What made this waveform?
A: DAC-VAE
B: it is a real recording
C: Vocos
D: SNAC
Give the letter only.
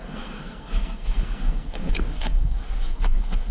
D